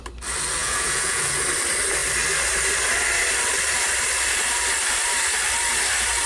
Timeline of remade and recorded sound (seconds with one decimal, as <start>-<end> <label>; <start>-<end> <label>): 0.0-0.6 recorded; 0.6-1.4 remade; 1.4-6.3 recorded